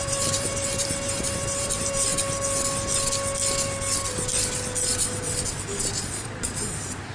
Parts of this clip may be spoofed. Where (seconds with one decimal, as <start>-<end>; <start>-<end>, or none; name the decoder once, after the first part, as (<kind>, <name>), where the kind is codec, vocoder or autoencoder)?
0.0-2.1 (vocoder, BigVGAN v2); 6.0-7.1